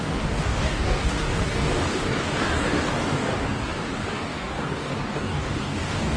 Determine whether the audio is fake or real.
fake